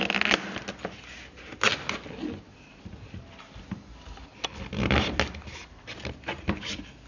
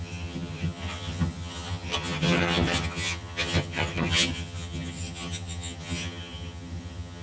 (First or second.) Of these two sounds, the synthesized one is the second